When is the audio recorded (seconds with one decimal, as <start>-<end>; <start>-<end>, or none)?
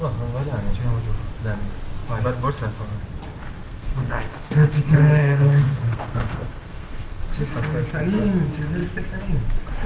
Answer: 0.0-3.6; 7.3-9.9